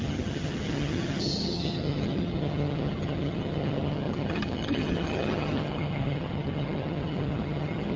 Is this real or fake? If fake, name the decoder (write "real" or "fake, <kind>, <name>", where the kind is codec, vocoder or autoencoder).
fake, vocoder, HiFi-GAN